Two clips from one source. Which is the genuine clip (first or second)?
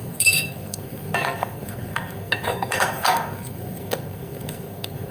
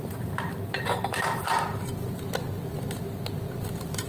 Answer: second